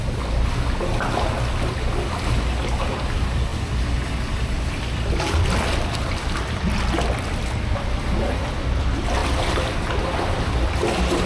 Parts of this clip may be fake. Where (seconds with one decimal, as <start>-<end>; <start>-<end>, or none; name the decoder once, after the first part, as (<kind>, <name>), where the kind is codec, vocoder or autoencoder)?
none